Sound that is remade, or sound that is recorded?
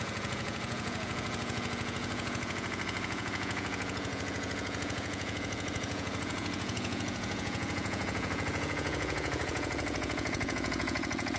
remade